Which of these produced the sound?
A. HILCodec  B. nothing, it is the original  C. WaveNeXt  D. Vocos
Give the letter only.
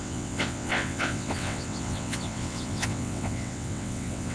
C